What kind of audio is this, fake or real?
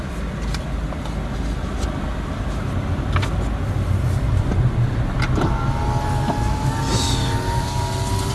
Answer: real